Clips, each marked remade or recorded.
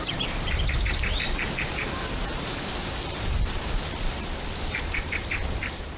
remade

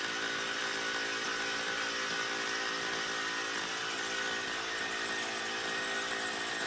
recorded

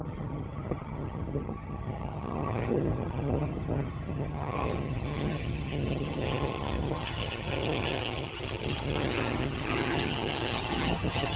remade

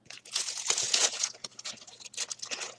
remade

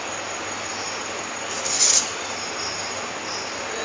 recorded